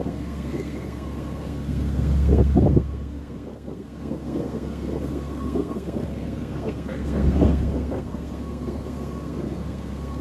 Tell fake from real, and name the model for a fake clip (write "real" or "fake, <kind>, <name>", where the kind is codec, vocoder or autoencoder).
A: fake, codec, SNAC